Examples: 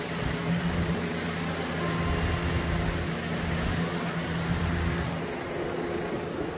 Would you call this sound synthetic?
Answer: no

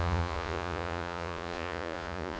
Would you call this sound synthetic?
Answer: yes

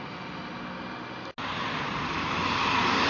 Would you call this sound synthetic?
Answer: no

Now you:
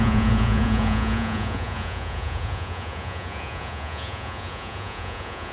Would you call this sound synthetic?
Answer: yes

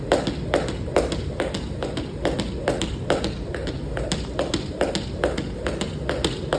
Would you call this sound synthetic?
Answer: no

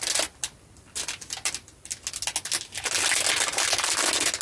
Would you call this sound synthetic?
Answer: no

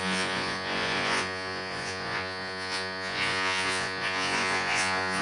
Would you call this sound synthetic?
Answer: yes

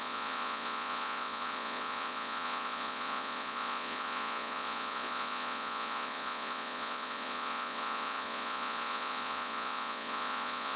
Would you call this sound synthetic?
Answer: yes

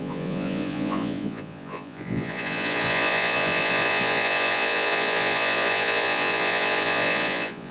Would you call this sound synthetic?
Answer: yes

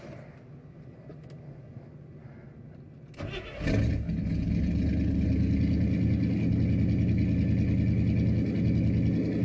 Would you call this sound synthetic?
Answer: no